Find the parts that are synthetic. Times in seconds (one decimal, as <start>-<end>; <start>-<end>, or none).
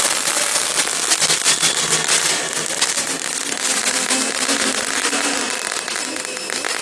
5.0-5.7